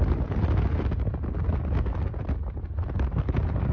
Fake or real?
real